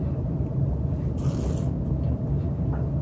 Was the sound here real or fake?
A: real